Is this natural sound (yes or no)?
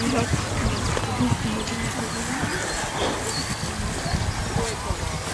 yes